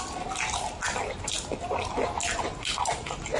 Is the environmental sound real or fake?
real